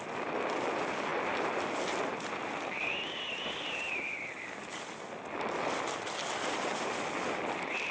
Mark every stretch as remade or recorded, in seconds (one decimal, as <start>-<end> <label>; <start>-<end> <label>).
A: 0.0-7.9 recorded